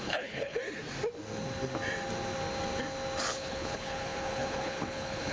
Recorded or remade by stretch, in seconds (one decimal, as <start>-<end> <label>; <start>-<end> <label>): 0.0-0.6 remade; 0.6-3.3 recorded; 3.3-5.3 remade